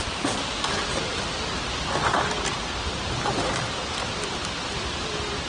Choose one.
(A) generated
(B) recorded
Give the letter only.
B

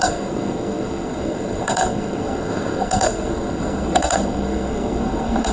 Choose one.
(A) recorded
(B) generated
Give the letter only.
B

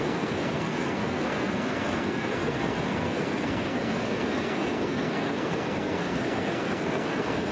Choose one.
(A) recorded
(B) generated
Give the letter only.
B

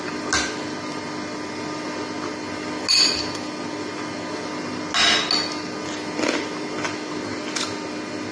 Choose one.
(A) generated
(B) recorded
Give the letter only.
B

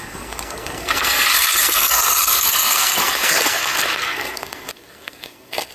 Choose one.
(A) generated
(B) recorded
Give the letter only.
A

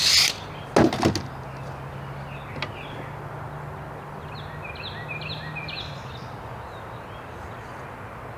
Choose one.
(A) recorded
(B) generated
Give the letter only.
A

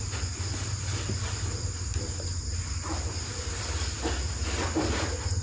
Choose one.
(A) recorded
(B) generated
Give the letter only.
A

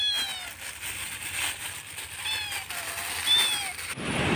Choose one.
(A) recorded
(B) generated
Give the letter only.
A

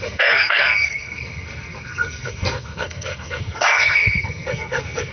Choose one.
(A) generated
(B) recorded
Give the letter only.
A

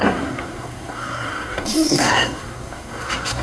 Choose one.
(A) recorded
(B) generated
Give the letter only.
B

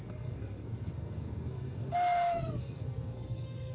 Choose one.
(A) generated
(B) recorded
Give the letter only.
A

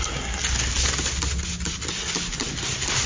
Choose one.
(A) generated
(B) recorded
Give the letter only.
B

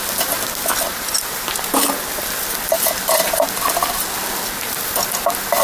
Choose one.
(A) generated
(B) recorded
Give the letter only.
B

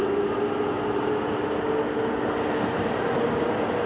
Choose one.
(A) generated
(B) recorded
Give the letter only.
B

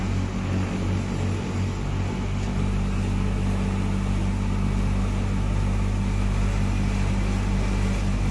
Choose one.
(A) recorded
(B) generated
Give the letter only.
A